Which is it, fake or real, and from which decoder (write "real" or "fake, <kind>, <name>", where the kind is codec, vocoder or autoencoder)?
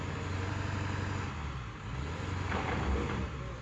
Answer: real